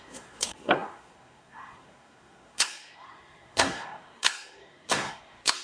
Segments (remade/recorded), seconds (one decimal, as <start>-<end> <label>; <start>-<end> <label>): 0.0-5.6 remade